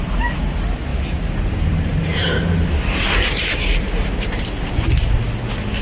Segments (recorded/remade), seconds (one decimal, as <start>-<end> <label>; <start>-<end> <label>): 0.0-0.9 recorded; 0.9-4.4 remade; 4.4-5.8 recorded